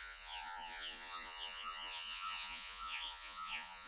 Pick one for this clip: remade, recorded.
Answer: remade